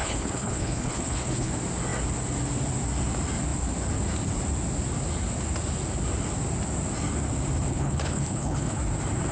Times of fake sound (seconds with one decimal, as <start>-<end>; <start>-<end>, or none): 0.0-1.5; 7.7-8.8